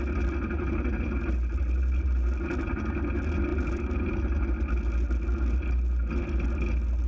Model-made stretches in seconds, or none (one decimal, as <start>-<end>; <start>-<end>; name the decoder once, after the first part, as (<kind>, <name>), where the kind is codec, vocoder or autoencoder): 3.5-4.0 (vocoder, BigVGAN v2)